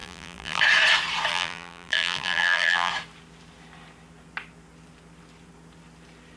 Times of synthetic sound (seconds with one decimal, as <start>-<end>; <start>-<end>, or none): 0.0-0.6; 1.3-2.9